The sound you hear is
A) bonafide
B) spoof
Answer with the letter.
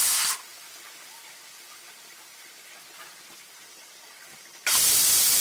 A